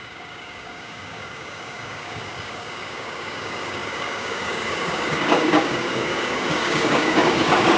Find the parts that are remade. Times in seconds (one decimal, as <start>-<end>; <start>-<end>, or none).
0.0-7.8